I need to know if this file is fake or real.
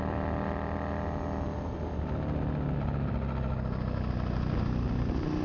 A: real